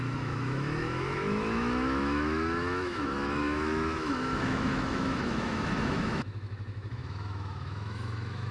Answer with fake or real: fake